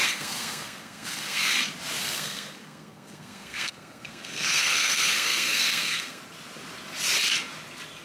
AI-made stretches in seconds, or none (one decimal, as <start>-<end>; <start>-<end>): 0.0-1.6; 2.0-6.2